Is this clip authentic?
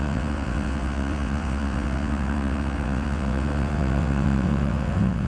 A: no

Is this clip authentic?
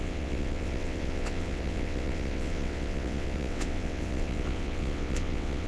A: no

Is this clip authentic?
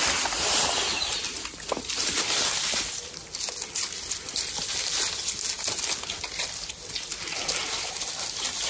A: yes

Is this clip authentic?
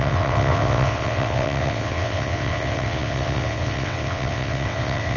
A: no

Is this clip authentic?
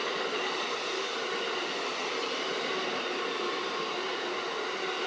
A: yes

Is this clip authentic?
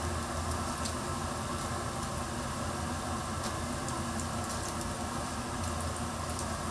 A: yes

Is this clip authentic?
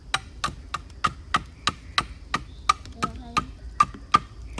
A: yes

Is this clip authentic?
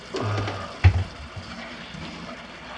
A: yes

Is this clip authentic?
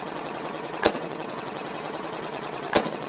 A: no